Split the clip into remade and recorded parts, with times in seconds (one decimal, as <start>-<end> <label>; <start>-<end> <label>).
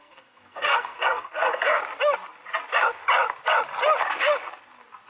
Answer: 0.0-1.8 remade; 1.8-5.1 recorded